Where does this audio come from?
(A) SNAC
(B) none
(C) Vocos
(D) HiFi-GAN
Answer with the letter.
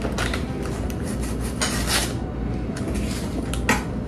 B